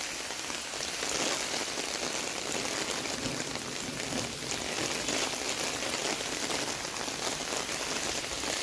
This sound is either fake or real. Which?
real